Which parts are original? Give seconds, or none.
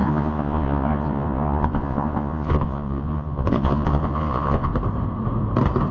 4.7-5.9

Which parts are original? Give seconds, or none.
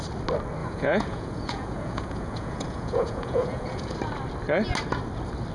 0.0-0.6; 3.9-5.5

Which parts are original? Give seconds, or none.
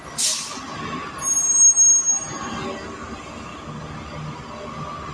0.0-5.1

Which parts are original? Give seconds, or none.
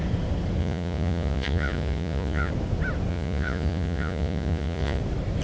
0.0-0.6; 2.5-3.1; 5.0-5.4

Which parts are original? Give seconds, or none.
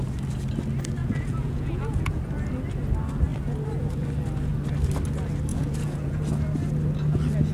0.0-1.0; 2.2-5.5; 6.2-7.5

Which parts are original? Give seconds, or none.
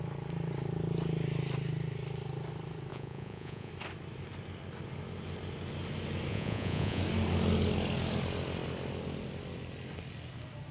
0.0-2.9; 3.7-6.3; 7.0-10.7